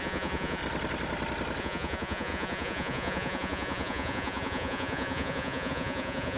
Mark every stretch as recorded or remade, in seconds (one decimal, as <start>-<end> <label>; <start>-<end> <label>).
0.0-0.6 remade; 0.6-1.6 recorded; 1.6-6.4 remade